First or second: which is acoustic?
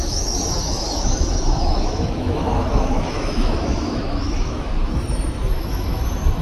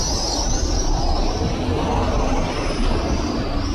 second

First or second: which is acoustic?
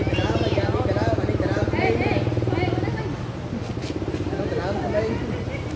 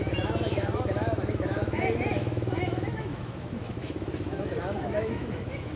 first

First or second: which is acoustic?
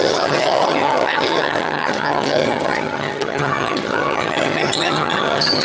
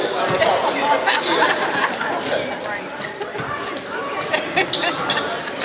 second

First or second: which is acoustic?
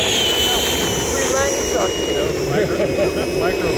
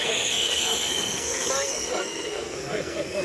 first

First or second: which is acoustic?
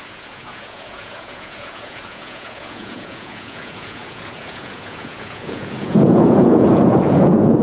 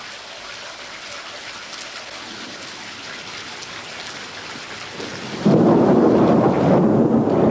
second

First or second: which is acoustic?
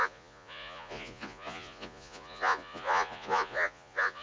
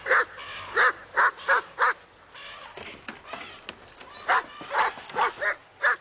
second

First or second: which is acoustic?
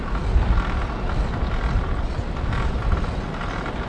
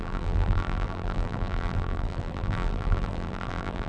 first